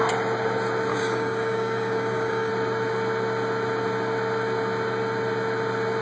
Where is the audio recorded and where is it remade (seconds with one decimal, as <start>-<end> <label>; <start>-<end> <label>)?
0.0-0.9 recorded; 0.9-2.5 remade; 2.5-6.0 recorded